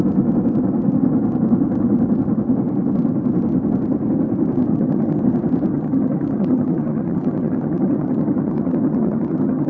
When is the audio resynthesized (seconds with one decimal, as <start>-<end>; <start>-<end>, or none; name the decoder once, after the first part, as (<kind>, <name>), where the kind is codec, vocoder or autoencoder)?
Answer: 4.7-5.2 (vocoder, HiFi-GAN); 5.7-9.7